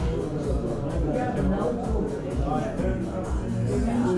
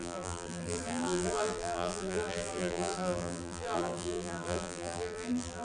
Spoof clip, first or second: second